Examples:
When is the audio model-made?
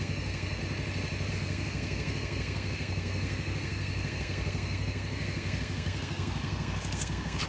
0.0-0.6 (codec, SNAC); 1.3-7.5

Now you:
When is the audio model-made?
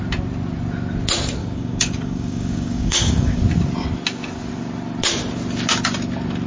1.4-3.4 (codec, DAC)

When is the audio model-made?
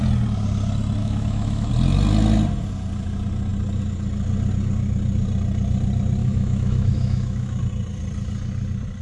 1.0-1.7 (autoencoder, DAC-VAE); 6.2-7.6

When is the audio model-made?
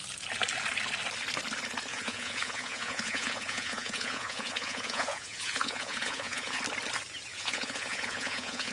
1.9-6.6 (vocoder, Vocos); 7.3-8.7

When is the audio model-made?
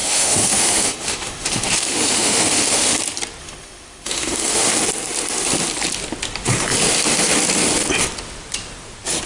0.0-3.0 (autoencoder, DAC-VAE); 3.4-4.8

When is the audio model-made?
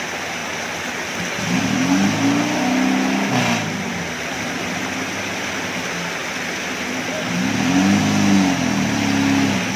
none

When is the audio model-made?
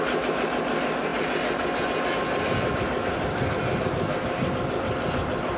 none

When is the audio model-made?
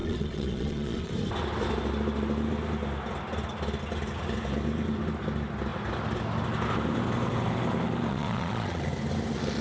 0.0-1.1 (vocoder, Vocos); 8.1-8.8